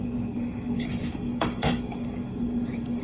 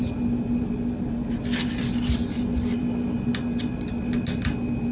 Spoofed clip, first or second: first